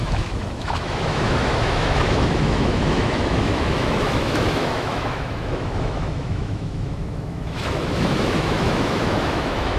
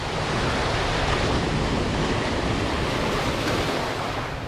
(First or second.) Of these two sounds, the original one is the second